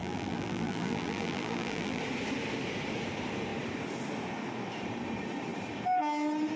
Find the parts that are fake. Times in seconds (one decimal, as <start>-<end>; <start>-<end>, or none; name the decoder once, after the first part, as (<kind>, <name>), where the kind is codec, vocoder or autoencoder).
0.0-2.0 (vocoder, BigVGAN v2)